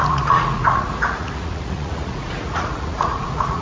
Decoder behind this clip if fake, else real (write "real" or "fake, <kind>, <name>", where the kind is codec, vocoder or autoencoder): fake, vocoder, Vocos